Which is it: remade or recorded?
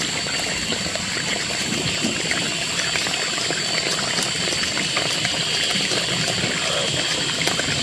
remade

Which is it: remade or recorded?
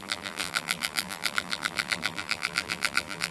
remade